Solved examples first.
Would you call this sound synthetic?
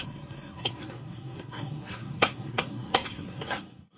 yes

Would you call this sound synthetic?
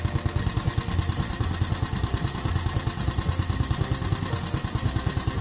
no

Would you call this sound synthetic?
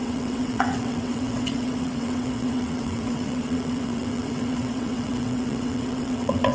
yes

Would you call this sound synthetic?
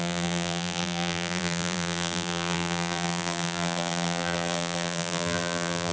yes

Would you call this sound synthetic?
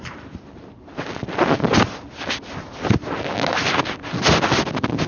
no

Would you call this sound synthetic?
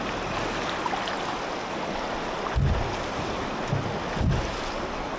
no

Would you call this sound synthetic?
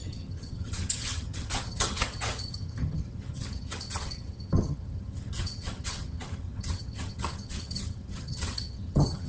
yes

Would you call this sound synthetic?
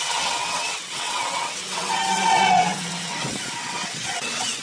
yes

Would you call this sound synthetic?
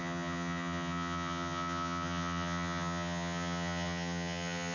yes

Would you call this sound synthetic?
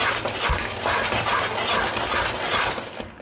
no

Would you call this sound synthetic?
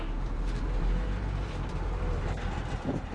yes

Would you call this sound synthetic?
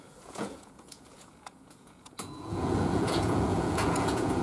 yes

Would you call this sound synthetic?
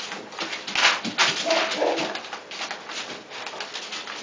no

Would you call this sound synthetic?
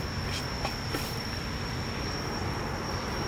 no